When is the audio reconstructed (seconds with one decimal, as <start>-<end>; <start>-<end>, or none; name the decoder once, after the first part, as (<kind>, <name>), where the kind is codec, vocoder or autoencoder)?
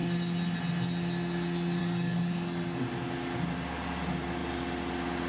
1.8-2.8 (codec, DAC)